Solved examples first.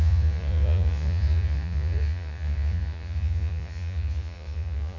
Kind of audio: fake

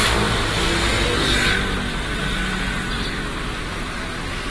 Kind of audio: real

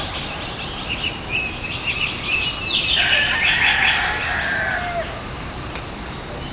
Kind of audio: real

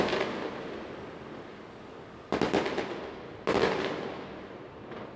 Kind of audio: real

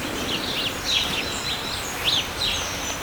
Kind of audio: real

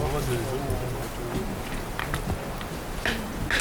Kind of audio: real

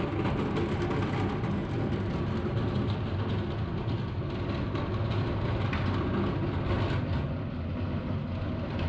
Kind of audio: real